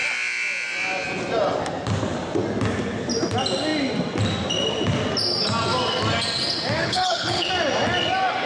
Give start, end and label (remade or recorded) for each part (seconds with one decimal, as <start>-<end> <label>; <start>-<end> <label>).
0.0-6.8 recorded; 6.8-7.5 remade; 7.5-8.5 recorded